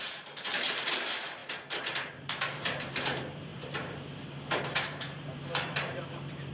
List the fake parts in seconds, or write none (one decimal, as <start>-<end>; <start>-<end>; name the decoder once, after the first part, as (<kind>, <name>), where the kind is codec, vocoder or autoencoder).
0.0-6.5 (vocoder, BigVGAN v2)